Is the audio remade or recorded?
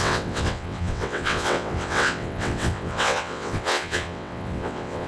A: remade